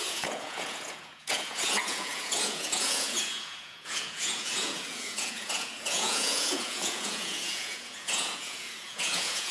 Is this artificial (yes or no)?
yes